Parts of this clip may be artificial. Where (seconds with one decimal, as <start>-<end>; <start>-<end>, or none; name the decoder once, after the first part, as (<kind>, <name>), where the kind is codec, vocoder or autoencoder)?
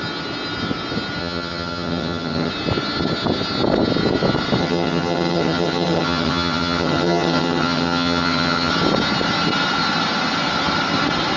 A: 1.2-2.5 (vocoder, HiFi-GAN); 4.6-8.7